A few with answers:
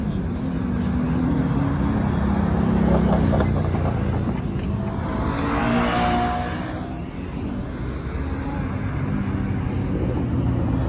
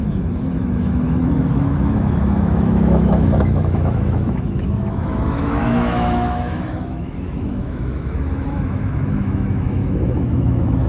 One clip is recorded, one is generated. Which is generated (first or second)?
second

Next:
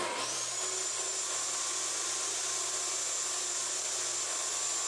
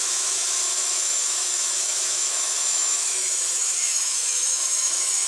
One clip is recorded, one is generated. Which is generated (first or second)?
second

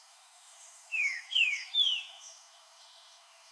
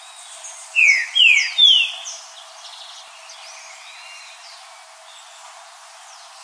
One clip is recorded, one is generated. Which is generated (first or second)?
first